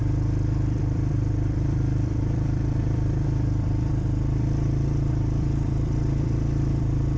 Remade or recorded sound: remade